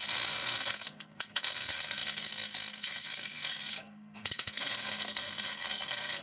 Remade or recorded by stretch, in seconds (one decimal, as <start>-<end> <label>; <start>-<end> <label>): 0.0-6.2 remade